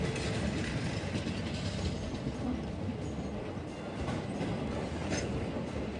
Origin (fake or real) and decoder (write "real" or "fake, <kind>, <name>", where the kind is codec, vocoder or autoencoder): real